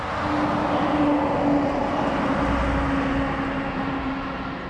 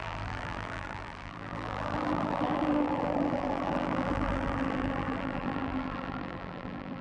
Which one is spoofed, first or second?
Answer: second